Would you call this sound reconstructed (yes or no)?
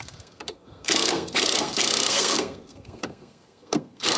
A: yes